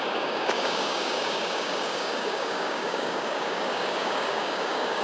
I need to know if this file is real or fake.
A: fake